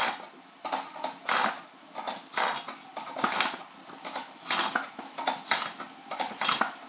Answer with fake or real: real